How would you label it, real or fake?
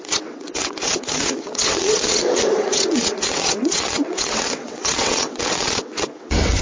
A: fake